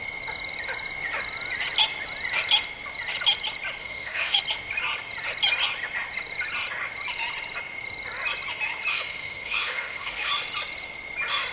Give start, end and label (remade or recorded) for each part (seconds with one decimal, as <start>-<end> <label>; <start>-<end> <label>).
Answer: 0.0-3.8 recorded; 3.8-4.4 remade; 4.4-8.9 recorded; 8.9-10.3 remade; 10.3-11.5 recorded